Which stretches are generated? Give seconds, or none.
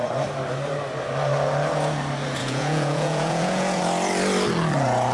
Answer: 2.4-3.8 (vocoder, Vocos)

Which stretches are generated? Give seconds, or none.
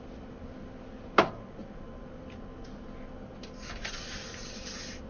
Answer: none